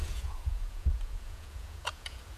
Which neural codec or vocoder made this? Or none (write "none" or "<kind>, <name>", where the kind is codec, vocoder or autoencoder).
vocoder, Vocos